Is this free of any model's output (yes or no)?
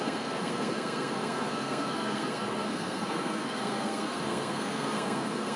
no